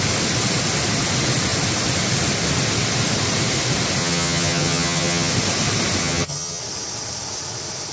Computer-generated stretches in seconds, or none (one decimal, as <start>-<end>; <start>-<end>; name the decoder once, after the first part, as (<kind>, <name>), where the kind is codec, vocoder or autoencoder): 4.0-5.3 (vocoder, HiFi-GAN); 6.0-6.6